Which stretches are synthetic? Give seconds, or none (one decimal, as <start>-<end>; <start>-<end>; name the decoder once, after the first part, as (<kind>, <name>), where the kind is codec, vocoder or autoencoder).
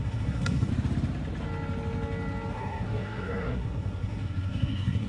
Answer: 0.0-0.7 (codec, SNAC); 2.5-5.1